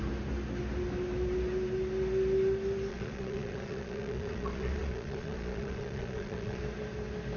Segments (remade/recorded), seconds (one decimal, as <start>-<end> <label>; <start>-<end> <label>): 0.0-2.9 recorded; 2.9-6.6 remade; 6.6-7.4 recorded